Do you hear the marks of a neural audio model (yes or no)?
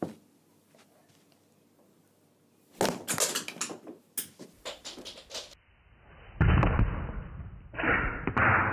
no